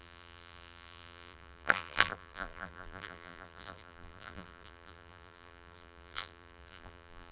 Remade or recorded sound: remade